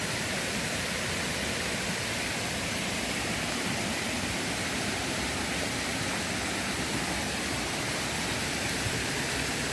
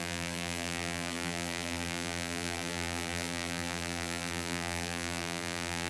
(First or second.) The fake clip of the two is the second